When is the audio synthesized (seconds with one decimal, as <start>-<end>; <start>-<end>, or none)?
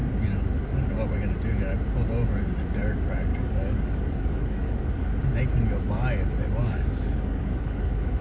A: 3.3-5.2; 6.6-8.2